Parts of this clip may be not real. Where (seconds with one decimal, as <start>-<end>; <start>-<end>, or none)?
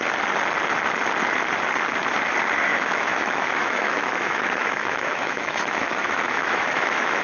2.7-7.2